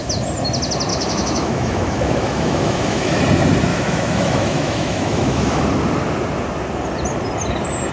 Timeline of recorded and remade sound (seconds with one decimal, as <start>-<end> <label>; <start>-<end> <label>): 0.0-0.9 recorded; 0.9-3.2 remade; 3.2-3.7 recorded; 3.7-5.6 remade; 5.6-7.9 recorded